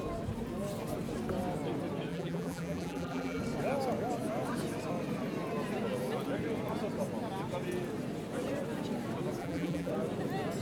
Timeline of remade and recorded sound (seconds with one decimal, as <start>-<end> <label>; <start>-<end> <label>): 0.0-2.1 recorded; 2.1-3.4 remade; 3.4-9.4 recorded; 9.4-9.9 remade; 9.9-10.6 recorded